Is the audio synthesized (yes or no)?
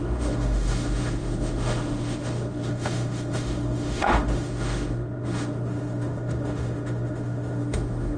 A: yes